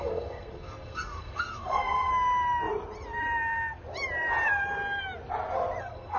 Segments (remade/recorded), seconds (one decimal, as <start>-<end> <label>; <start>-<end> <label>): 0.0-2.1 remade; 2.1-5.8 recorded; 5.8-6.2 remade